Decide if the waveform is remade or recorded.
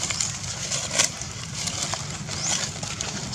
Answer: recorded